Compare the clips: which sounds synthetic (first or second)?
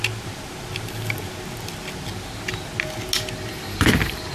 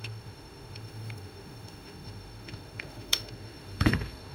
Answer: second